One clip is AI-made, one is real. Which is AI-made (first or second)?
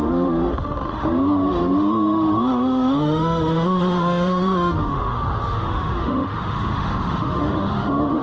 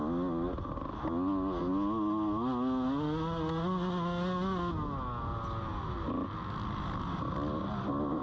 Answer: first